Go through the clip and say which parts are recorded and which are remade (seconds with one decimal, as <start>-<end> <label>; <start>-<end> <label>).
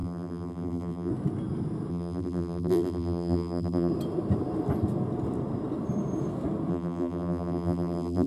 0.0-1.1 remade; 1.1-1.9 recorded; 1.9-3.9 remade; 3.9-6.7 recorded; 6.7-8.3 remade